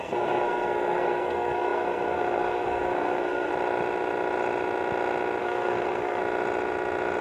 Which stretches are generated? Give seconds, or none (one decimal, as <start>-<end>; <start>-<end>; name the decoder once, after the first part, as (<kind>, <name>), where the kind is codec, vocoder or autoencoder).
0.0-3.5 (codec, SNAC); 5.4-6.2